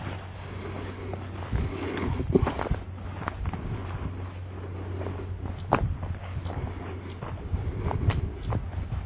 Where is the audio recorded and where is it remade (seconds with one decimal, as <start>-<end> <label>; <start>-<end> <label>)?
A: 0.0-9.1 recorded